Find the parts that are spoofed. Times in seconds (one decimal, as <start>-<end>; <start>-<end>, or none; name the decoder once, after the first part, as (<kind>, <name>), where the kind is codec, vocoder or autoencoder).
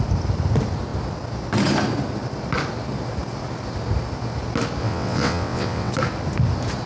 4.8-5.9 (vocoder, WaveNeXt)